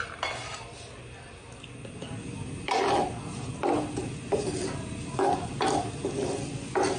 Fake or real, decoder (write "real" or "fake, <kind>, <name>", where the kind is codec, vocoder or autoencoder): real